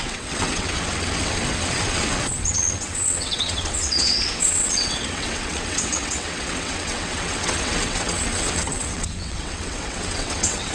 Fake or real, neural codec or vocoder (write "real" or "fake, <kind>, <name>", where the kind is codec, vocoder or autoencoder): fake, vocoder, WaveNeXt